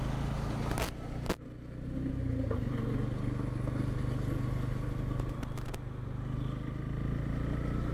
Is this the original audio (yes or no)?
yes